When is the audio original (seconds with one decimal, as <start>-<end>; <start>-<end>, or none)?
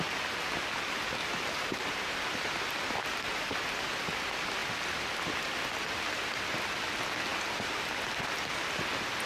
0.0-1.2; 3.9-9.3